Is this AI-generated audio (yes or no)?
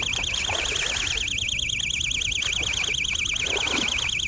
no